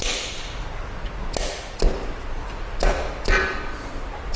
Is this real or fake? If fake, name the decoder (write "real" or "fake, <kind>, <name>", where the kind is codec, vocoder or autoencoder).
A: real